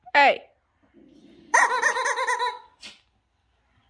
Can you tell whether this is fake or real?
real